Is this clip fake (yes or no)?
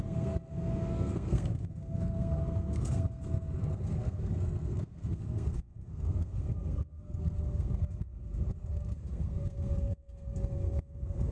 yes